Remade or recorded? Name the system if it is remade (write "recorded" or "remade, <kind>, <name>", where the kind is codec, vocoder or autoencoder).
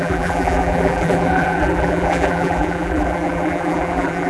remade, vocoder, BigVGAN v2